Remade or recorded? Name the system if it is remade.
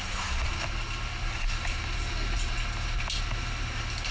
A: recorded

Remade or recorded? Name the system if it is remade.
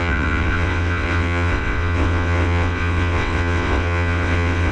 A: remade, vocoder, WaveNeXt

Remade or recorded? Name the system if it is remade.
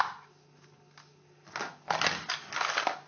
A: recorded